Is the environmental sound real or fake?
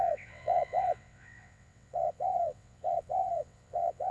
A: fake